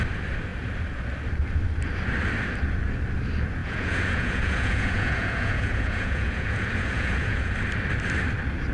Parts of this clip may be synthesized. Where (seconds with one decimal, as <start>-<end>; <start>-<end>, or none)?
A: 3.6-7.5